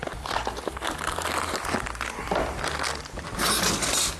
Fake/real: real